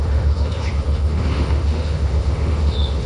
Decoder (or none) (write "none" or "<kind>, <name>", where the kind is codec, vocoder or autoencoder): autoencoder, DAC-VAE